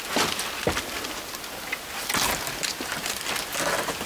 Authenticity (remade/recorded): recorded